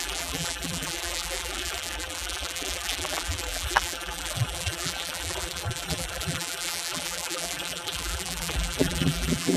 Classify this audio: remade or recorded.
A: remade